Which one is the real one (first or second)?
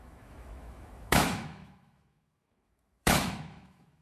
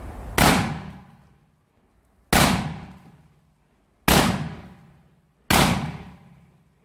second